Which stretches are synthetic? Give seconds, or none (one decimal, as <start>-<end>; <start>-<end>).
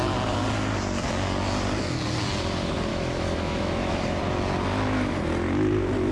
2.9-4.2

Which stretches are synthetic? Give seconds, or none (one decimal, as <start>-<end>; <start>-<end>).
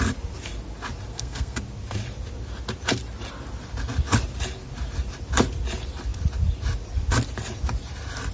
1.1-1.6